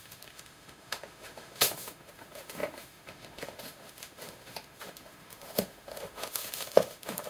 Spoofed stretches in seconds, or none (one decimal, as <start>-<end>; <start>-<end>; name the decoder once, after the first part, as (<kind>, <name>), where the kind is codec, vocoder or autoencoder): 0.0-7.3 (autoencoder, DAC-VAE)